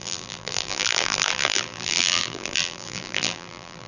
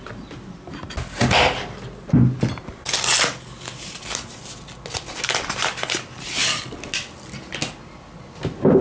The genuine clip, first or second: second